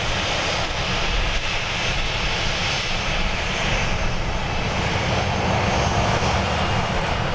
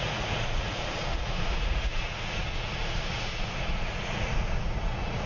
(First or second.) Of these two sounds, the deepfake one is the second